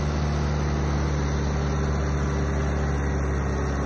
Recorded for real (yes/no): yes